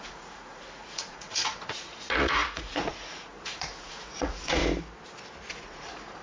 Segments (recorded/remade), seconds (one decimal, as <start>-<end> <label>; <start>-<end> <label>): 0.0-4.6 remade; 4.6-5.5 recorded; 5.5-6.2 remade